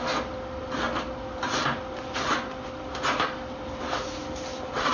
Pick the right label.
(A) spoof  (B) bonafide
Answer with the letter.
B